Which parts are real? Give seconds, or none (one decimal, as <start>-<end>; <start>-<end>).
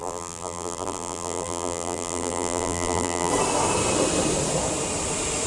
3.3-5.5